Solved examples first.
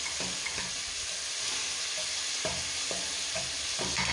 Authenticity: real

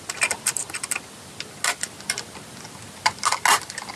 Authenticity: real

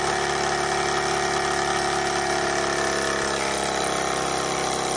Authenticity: real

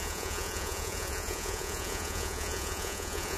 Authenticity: fake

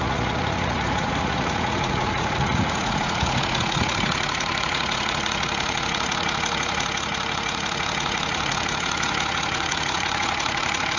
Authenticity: fake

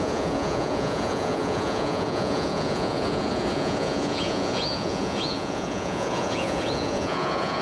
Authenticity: fake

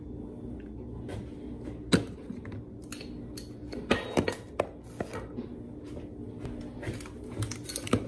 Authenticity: real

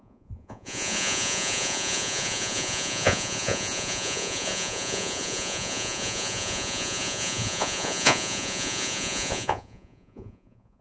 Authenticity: fake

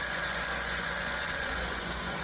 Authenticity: fake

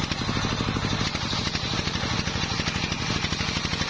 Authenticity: real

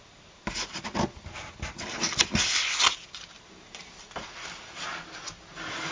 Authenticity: real